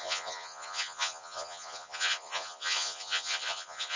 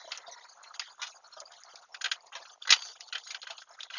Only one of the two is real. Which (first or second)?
second